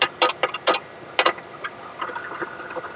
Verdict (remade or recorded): recorded